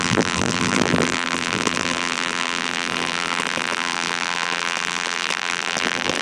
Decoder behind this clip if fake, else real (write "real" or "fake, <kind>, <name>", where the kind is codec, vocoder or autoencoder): fake, vocoder, BigVGAN v2